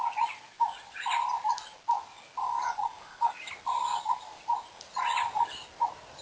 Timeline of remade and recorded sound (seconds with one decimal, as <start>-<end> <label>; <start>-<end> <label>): 0.0-2.4 recorded; 2.4-3.3 remade; 3.3-3.8 recorded; 3.8-4.4 remade; 4.4-6.2 recorded